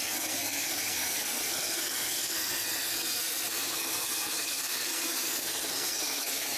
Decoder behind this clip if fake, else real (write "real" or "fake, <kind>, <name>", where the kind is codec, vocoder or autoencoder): fake, codec, SNAC